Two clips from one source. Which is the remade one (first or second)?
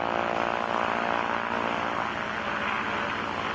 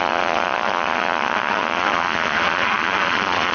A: second